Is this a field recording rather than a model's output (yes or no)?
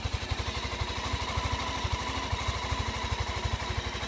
yes